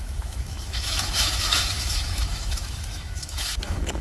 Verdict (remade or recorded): remade